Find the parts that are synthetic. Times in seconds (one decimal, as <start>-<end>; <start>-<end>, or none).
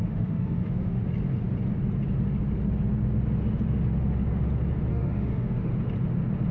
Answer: 0.0-1.0; 4.9-5.7